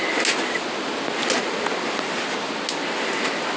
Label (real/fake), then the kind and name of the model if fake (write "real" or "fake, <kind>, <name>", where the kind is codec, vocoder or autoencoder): real